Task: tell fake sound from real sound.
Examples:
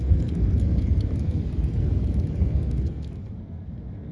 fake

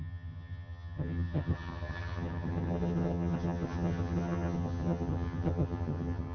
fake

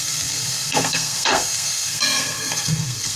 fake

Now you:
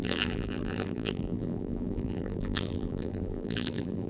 fake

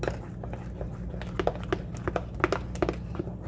real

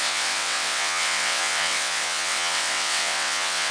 fake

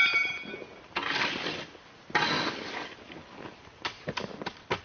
real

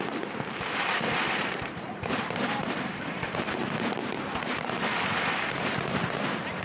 fake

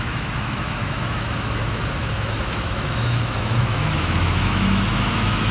fake